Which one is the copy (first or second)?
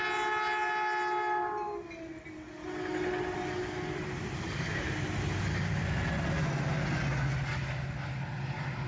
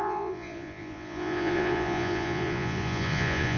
second